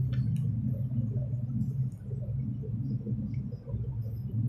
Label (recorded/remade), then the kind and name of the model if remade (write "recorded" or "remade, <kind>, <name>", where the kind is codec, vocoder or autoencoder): recorded